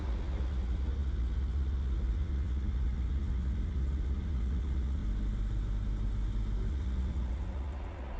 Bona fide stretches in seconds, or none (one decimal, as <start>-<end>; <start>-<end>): 5.0-6.7